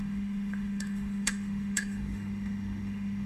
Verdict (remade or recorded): remade